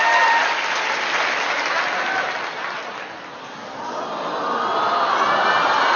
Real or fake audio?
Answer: real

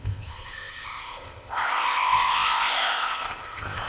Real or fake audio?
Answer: fake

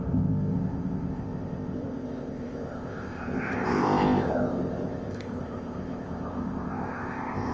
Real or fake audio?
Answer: fake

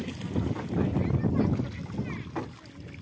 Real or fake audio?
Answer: real